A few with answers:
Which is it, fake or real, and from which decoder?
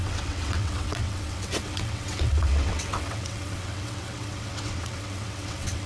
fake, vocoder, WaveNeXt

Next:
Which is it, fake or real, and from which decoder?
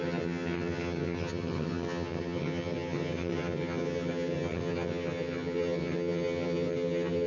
fake, vocoder, HiFi-GAN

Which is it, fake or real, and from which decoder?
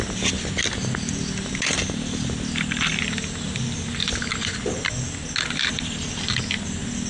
real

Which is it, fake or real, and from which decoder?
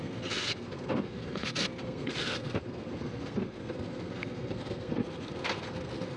fake, codec, SNAC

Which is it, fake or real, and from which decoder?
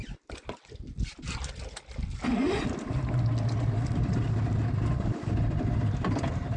real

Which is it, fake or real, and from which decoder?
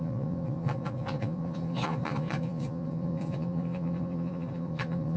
fake, vocoder, Vocos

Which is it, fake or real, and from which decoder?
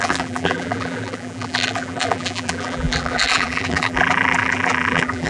fake, vocoder, BigVGAN v2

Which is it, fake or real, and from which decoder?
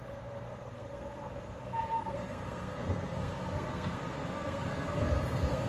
fake, codec, SNAC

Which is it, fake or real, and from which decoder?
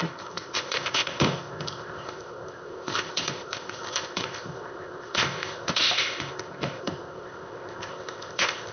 fake, codec, ZipCodec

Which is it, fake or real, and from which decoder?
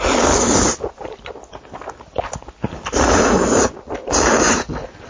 real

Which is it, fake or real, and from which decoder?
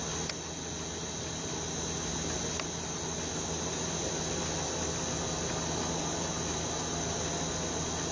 real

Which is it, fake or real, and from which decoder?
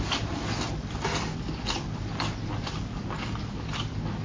real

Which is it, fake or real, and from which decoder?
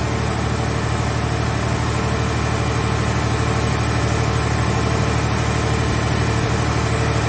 real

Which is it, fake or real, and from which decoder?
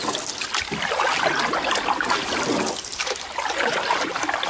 real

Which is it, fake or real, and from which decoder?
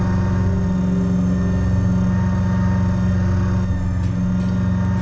real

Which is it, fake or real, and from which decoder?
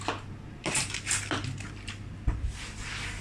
real